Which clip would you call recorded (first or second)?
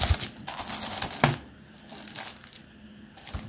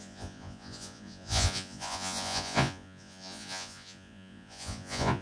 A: first